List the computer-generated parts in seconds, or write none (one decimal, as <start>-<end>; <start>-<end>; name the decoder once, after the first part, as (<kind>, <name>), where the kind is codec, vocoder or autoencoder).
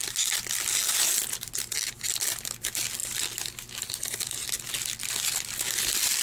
none